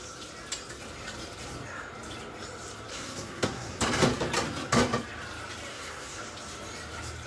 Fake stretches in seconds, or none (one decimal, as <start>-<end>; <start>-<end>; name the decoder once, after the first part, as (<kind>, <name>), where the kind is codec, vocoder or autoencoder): 2.9-3.8 (codec, SNAC); 5.7-6.2